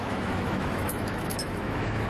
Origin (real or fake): fake